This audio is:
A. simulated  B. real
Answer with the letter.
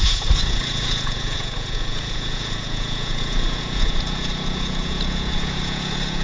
A